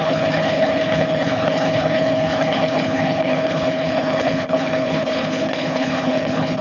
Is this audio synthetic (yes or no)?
yes